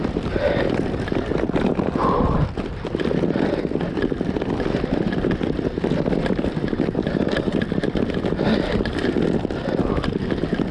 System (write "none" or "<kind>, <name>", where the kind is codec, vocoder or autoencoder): none